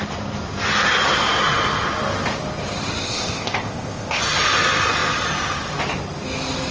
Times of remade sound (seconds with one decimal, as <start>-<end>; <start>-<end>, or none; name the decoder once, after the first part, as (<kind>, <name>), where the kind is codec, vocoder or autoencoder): 3.0-4.2 (codec, ZipCodec)